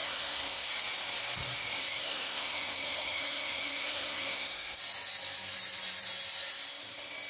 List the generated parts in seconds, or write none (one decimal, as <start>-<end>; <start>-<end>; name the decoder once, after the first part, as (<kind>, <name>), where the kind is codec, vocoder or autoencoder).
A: 0.0-0.7 (codec, SNAC); 1.8-4.8